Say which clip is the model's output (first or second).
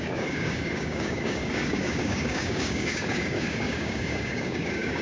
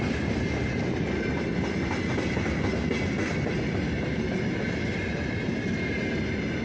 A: first